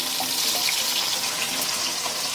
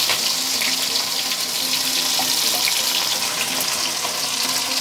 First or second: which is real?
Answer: second